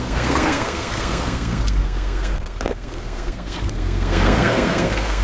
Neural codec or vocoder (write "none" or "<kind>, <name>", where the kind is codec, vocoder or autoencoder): codec, SNAC